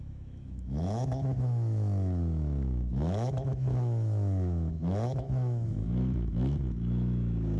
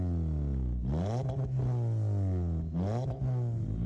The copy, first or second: first